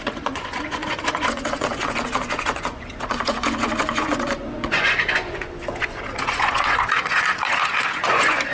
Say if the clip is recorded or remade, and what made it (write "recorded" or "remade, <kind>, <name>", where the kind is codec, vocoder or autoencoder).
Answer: remade, vocoder, Vocos